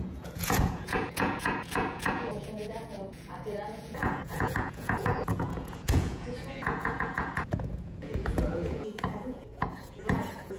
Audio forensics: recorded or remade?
remade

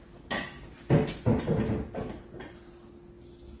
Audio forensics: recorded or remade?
recorded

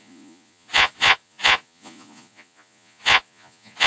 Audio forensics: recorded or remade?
remade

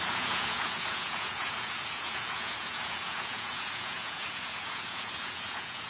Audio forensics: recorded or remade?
remade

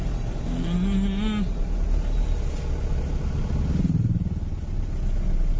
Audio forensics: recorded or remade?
recorded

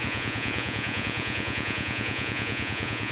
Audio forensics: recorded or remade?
remade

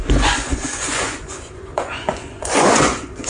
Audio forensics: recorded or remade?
remade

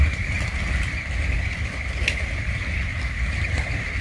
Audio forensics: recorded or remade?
recorded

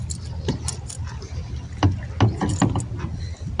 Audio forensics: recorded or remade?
recorded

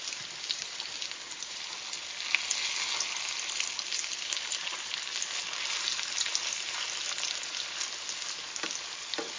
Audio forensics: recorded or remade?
recorded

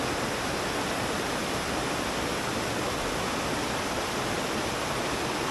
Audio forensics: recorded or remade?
recorded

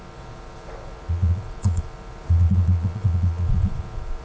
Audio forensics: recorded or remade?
remade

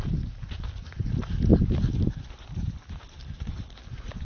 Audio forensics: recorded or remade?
recorded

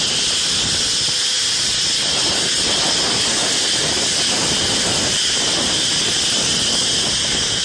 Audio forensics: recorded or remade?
recorded